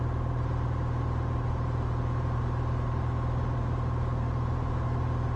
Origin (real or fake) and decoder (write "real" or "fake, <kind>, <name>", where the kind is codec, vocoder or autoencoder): real